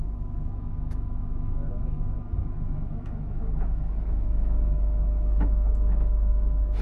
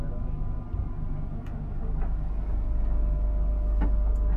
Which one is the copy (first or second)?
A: first